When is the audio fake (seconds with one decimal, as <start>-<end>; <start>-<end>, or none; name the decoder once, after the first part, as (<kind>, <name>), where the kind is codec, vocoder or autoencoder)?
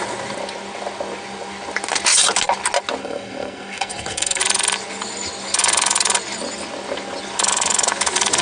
3.0-4.4 (codec, SNAC)